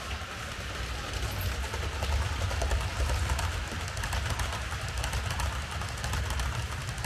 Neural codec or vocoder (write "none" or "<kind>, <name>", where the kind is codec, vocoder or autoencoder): none